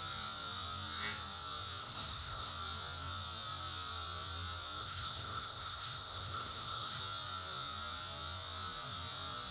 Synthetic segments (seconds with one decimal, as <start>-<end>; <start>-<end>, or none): 1.8-2.5; 4.8-7.0